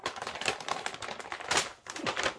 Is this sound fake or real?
real